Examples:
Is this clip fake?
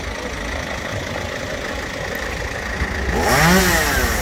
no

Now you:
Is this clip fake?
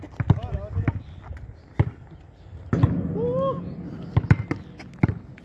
no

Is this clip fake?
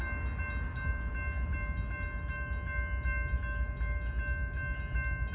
no